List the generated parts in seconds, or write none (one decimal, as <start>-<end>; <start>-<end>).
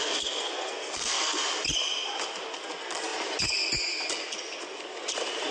0.0-1.4